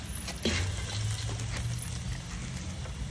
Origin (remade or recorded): recorded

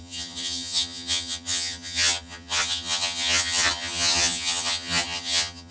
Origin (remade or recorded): remade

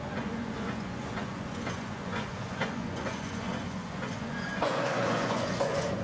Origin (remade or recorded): remade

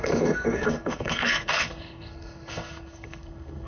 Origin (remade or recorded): remade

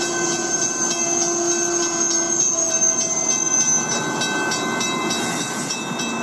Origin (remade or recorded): recorded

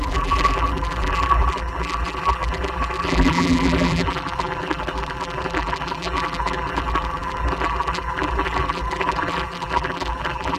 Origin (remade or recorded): remade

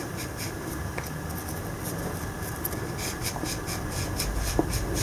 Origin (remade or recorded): recorded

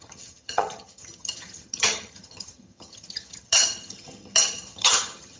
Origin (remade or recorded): remade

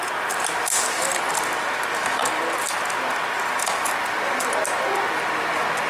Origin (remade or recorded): recorded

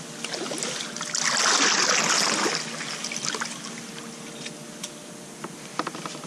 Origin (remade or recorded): recorded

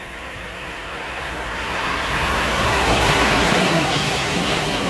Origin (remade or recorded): remade